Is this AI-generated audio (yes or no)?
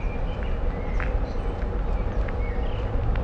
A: no